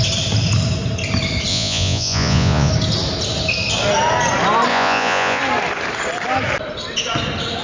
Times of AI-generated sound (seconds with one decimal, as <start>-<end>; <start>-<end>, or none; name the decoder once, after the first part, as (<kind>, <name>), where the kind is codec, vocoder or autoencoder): 1.5-2.7 (vocoder, Vocos); 4.7-5.4